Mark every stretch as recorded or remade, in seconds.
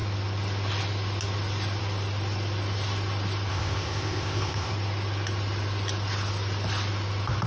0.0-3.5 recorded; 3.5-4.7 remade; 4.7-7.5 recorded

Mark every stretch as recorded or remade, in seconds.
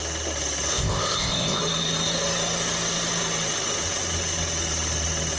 0.0-0.7 recorded; 0.7-1.6 remade; 1.6-5.4 recorded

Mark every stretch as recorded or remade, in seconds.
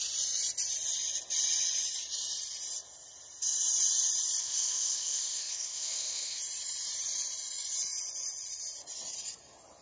0.0-4.4 recorded; 4.4-6.4 remade; 6.4-9.8 recorded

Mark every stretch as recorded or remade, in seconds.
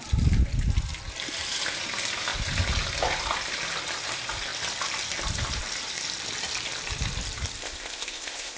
0.0-7.6 recorded; 7.6-8.6 remade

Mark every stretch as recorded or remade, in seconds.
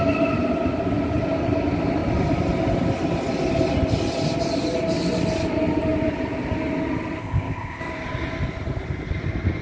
0.0-7.2 recorded; 7.2-7.8 remade; 7.8-9.6 recorded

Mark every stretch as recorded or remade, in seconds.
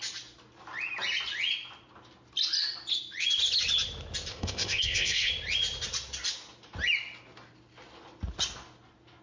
0.0-4.3 recorded; 4.3-5.3 remade; 5.3-9.2 recorded